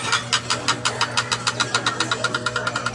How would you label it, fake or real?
real